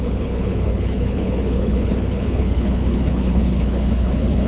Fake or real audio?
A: fake